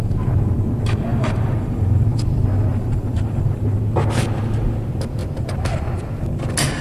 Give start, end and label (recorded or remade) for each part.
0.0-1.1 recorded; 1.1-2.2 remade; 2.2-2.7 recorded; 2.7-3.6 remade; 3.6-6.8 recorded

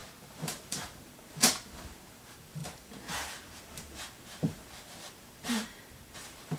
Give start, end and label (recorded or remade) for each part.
0.0-6.6 remade

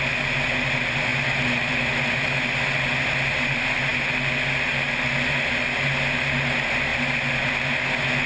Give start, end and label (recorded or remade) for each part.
0.0-8.3 recorded

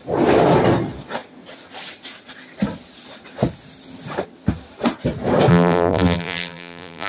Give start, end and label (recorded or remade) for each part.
0.0-5.5 recorded; 5.5-7.1 remade

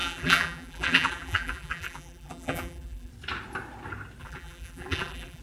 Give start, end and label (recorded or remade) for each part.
0.0-3.1 remade; 3.1-4.2 recorded; 4.2-5.4 remade

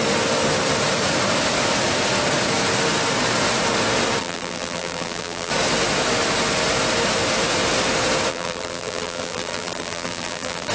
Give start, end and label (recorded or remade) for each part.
0.0-4.2 recorded; 4.2-5.5 remade; 5.5-8.3 recorded; 8.3-10.7 remade

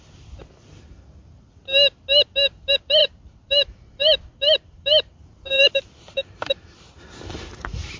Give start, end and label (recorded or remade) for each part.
0.0-3.0 recorded; 3.0-8.0 remade

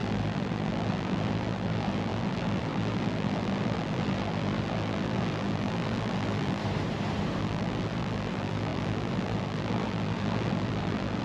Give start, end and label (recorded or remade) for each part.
0.0-6.6 remade; 6.6-7.4 recorded; 7.4-11.2 remade